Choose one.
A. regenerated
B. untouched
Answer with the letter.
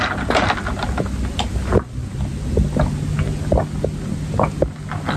B